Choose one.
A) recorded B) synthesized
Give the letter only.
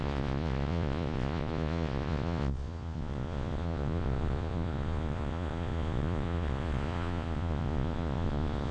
B